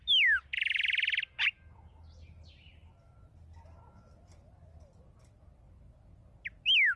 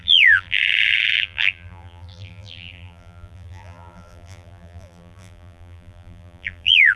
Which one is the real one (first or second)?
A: first